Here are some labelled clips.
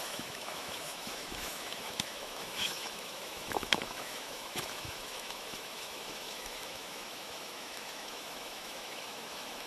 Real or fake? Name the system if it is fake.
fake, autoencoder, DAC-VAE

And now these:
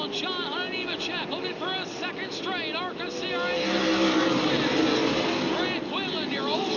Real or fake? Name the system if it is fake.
real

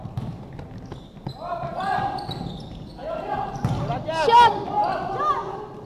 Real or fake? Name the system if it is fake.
real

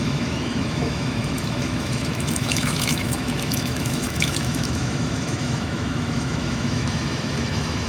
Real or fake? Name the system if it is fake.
fake, autoencoder, DAC-VAE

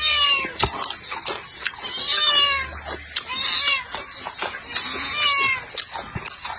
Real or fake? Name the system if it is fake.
real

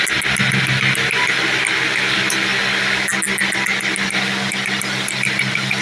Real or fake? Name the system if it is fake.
real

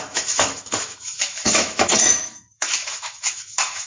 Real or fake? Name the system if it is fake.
fake, autoencoder, DAC-VAE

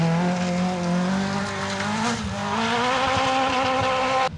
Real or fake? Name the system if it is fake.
real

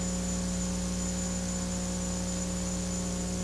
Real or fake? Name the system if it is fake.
real